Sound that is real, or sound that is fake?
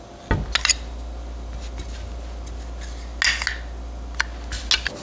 real